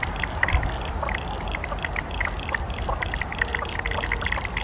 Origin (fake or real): real